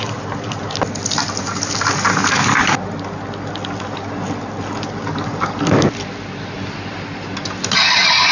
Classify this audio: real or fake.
real